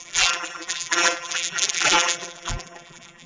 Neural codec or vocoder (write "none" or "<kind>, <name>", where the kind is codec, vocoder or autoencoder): vocoder, BigVGAN v2